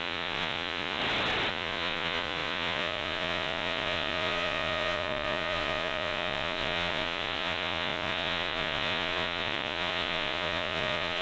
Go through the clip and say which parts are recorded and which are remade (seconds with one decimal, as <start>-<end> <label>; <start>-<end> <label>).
0.0-1.0 remade; 1.0-1.5 recorded; 1.5-11.2 remade